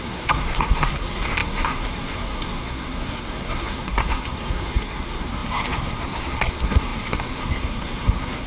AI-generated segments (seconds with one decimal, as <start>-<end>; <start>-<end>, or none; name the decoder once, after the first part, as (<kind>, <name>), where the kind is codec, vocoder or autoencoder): 0.0-8.5 (codec, SNAC)